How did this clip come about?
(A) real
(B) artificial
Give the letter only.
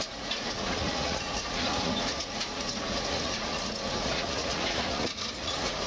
B